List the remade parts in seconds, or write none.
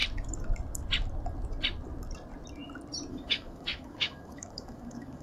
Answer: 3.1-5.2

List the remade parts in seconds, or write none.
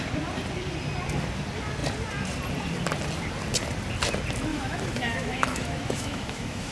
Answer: 4.5-6.7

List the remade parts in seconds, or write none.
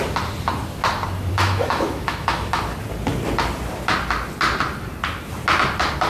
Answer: 1.3-2.6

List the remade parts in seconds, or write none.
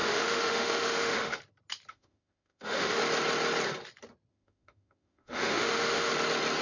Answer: 0.0-1.4; 1.9-3.0; 4.3-6.1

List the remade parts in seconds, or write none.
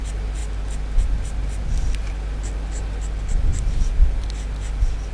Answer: none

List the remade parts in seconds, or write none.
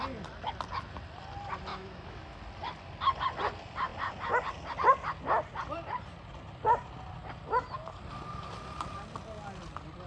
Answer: 1.7-2.4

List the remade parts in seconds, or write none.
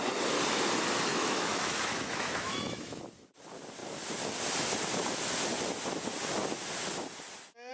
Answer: 1.1-3.0